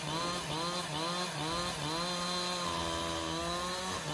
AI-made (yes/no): no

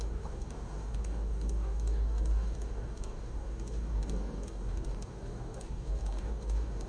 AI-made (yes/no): yes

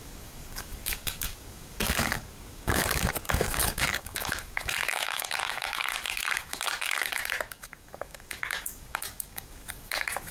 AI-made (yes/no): yes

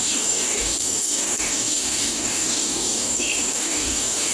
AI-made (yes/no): yes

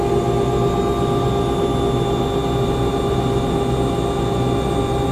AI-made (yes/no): no